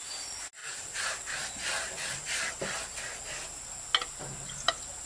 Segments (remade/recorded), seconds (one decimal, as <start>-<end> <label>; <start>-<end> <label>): 0.0-5.1 recorded